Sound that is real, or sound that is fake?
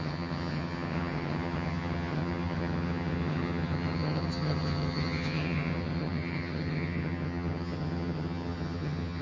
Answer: fake